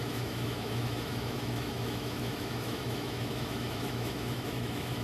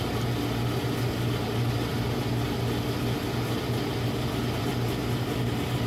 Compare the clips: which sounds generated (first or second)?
first